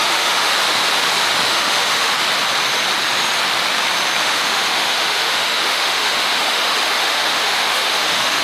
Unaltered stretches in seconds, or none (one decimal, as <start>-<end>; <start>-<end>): 0.5-1.5; 2.1-4.2